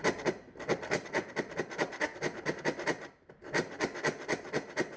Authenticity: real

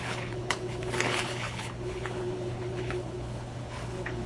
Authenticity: fake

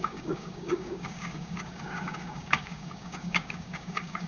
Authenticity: fake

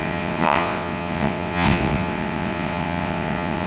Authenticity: fake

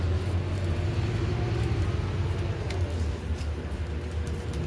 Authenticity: real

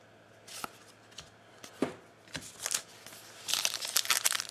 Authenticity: real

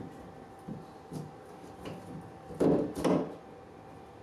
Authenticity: real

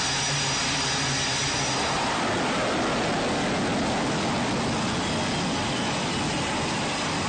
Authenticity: real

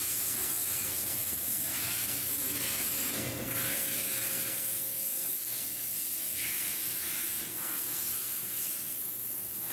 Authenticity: fake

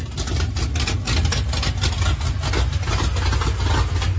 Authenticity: real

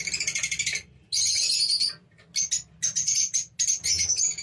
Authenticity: real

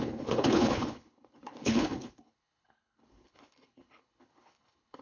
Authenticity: fake